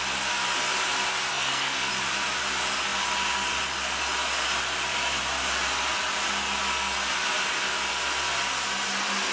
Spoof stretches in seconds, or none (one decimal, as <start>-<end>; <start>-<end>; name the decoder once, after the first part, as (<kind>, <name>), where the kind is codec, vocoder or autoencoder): 1.3-1.9 (codec, SNAC)